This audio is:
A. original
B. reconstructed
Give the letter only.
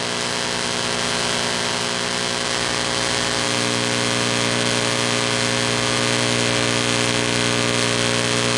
A